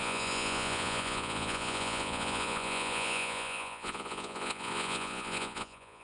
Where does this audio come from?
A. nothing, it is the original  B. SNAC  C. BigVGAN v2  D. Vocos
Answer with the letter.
D